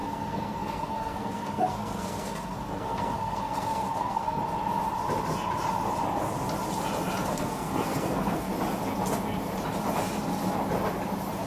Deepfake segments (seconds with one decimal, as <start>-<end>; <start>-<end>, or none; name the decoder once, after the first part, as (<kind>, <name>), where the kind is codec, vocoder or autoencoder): 0.0-4.4 (codec, SNAC); 7.2-8.5